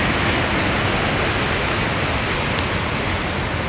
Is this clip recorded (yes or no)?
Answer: yes